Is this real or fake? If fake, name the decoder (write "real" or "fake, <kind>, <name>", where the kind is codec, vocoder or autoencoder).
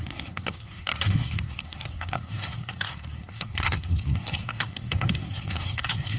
fake, codec, SNAC